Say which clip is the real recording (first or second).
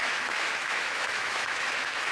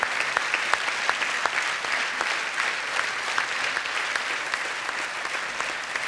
second